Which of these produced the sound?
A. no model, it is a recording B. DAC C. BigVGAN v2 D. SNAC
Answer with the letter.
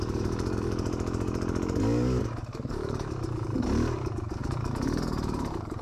B